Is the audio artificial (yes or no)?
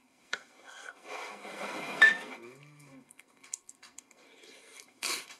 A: yes